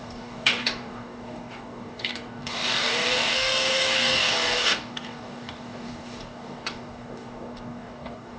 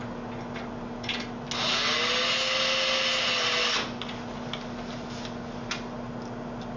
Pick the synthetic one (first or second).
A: first